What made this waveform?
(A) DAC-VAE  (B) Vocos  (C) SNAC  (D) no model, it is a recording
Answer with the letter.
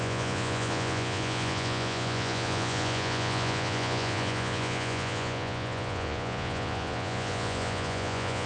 B